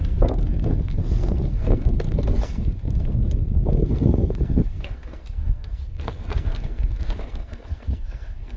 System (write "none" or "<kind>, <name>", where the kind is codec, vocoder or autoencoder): codec, SNAC